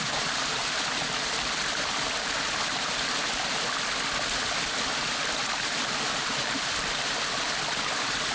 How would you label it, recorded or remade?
recorded